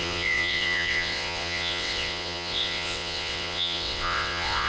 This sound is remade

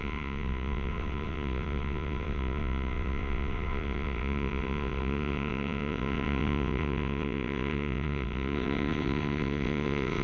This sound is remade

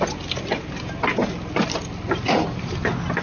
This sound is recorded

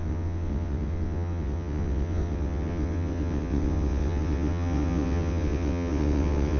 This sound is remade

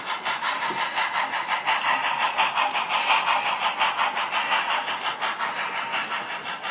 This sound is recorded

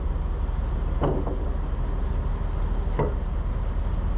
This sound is recorded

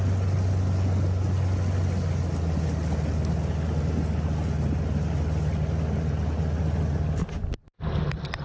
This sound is recorded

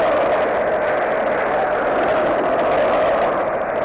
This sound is recorded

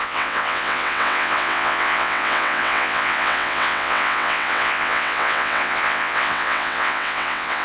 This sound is remade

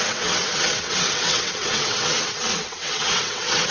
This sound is remade